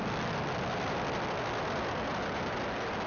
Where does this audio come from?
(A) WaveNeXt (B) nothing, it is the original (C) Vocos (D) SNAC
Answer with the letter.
B